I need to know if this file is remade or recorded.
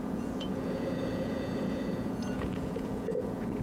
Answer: remade